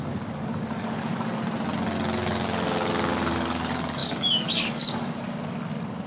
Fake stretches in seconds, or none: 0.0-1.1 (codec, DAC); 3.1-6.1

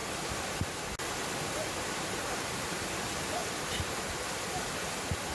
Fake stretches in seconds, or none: none

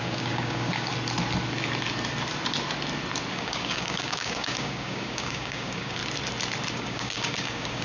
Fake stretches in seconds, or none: 0.0-0.9 (codec, DAC); 3.3-6.0; 6.7-7.8